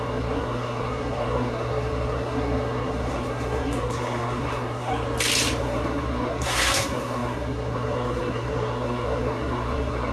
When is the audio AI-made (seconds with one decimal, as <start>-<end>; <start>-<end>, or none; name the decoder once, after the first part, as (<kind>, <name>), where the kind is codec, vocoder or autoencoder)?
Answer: 0.0-4.9 (codec, SNAC); 5.6-10.1